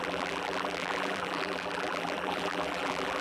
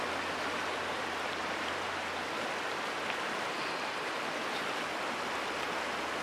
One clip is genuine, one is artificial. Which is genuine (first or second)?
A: second